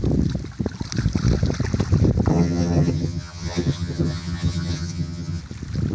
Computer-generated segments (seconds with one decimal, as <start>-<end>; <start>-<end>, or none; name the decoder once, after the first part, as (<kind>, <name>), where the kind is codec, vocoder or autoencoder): 2.3-5.4 (vocoder, HiFi-GAN)